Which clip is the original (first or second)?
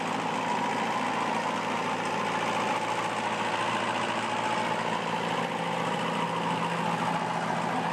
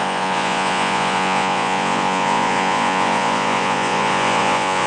first